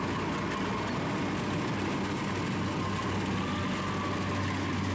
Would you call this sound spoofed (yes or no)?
no